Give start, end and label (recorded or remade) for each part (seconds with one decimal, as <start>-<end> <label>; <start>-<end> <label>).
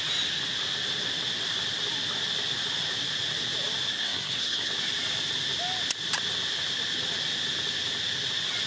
0.0-3.9 recorded; 3.9-4.7 remade; 4.7-8.7 recorded